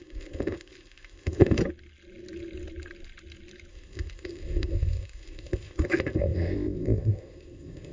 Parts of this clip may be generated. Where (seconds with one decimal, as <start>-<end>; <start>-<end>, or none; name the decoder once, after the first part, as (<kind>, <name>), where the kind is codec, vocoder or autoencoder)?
0.0-1.6 (codec, ZipCodec); 3.7-7.9